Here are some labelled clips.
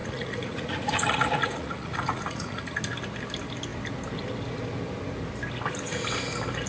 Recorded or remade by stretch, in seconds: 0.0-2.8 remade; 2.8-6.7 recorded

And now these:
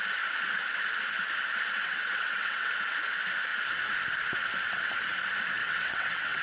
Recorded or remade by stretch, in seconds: 0.0-1.8 recorded; 1.8-2.7 remade; 2.7-5.6 recorded; 5.6-6.4 remade

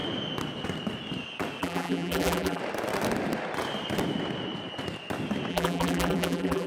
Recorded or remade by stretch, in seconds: 0.0-1.6 recorded; 1.6-2.6 remade; 2.6-5.5 recorded; 5.5-6.7 remade

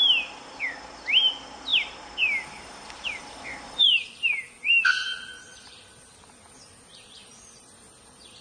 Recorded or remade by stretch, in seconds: 0.0-8.4 recorded

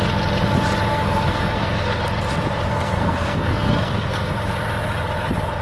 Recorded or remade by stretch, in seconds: 0.0-0.9 recorded; 0.9-2.0 remade; 2.0-2.7 recorded; 2.7-4.3 remade; 4.3-5.6 recorded

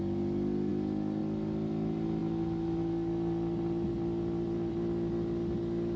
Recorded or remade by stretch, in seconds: 0.0-6.0 recorded

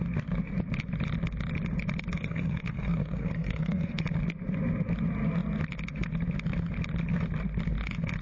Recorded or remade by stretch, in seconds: 0.0-2.1 recorded; 2.1-4.0 remade; 4.0-8.2 recorded

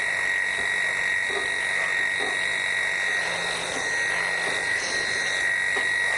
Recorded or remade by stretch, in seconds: 0.0-6.2 recorded